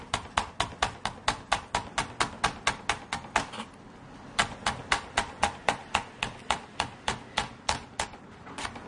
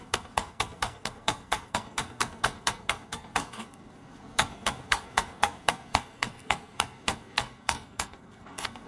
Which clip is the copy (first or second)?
second